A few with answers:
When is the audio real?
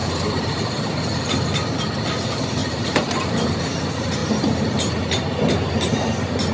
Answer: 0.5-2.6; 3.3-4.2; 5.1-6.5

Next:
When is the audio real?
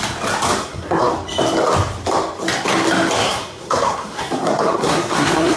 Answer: 0.0-0.6; 1.1-3.2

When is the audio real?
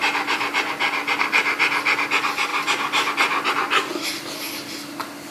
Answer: 0.0-2.5; 3.1-5.3